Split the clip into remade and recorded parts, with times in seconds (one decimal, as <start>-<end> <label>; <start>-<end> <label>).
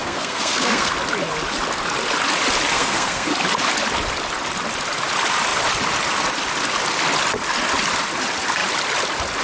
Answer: 0.0-0.9 remade; 0.9-2.7 recorded; 2.7-3.3 remade; 3.3-9.4 recorded